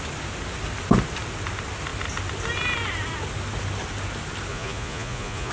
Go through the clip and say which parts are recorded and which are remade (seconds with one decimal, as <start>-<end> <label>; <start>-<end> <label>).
0.0-4.5 recorded; 4.5-5.5 remade

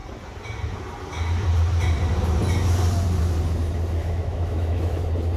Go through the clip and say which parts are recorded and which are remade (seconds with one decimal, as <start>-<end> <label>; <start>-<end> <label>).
0.0-4.0 recorded; 4.0-5.0 remade; 5.0-5.4 recorded

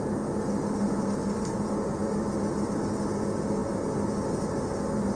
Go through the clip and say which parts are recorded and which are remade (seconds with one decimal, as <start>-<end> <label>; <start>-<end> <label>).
0.0-1.2 recorded; 1.2-2.0 remade; 2.0-5.2 recorded

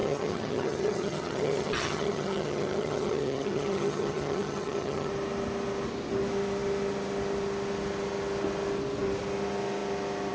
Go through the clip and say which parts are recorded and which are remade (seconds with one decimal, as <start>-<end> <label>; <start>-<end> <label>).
0.0-5.1 remade; 5.1-10.3 recorded

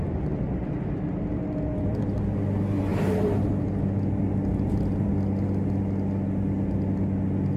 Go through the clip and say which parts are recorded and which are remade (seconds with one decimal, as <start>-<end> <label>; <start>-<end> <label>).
0.0-2.9 recorded; 2.9-3.5 remade; 3.5-4.5 recorded; 4.5-5.1 remade; 5.1-7.6 recorded

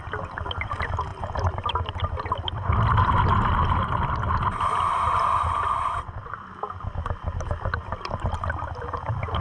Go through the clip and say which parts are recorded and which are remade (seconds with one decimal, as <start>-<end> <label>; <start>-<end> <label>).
0.0-9.4 recorded

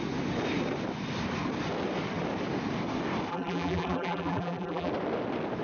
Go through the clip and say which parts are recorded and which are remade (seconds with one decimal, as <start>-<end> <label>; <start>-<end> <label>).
0.0-3.3 recorded; 3.3-4.9 remade; 4.9-5.6 recorded